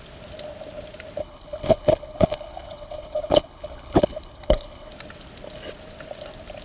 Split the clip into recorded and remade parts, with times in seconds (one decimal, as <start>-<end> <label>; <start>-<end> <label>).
0.0-1.2 recorded; 1.2-4.9 remade; 4.9-6.6 recorded